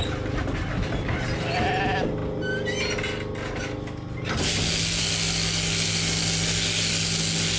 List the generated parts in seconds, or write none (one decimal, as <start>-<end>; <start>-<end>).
none